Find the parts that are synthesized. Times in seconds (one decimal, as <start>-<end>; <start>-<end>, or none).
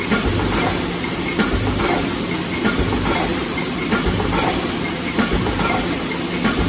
1.1-1.8; 3.3-6.1